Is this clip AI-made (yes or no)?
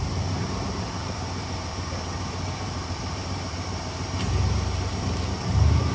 yes